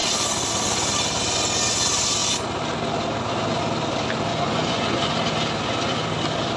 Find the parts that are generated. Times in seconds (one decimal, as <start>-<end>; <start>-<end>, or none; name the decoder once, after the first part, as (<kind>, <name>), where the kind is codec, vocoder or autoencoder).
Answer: 4.3-5.1 (vocoder, Vocos)